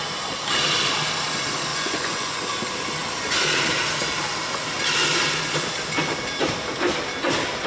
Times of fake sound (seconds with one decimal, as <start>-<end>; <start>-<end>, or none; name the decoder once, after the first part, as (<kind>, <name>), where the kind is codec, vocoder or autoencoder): 1.7-2.4 (vocoder, Vocos)